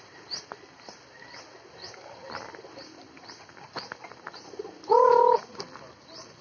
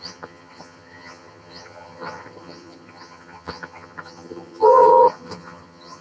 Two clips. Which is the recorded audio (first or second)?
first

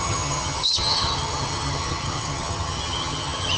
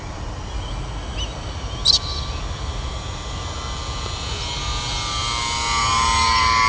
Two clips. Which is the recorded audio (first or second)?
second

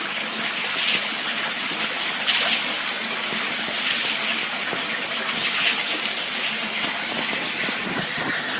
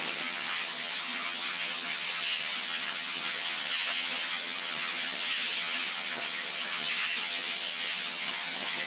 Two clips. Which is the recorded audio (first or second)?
first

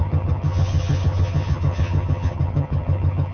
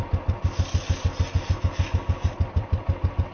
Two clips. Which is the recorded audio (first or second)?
second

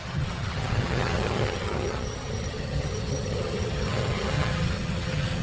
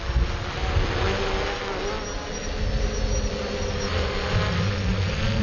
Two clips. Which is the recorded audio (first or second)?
second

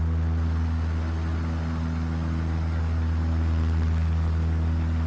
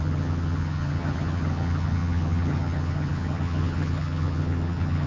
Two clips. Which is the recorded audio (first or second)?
first